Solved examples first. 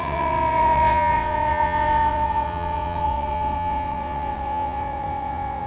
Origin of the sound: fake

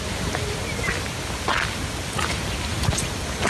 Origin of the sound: real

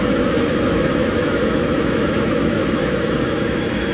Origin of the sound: fake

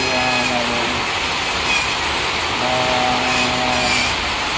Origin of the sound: real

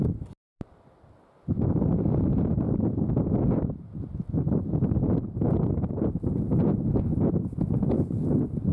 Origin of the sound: real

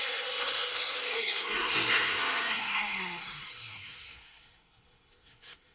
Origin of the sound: fake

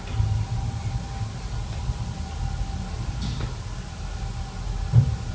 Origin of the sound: real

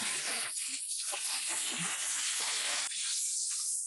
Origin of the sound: real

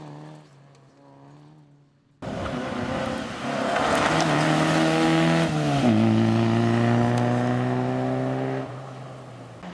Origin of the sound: real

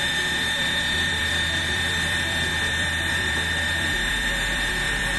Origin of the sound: fake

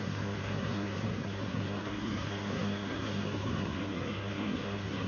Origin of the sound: fake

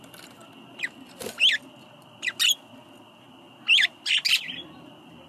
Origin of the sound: real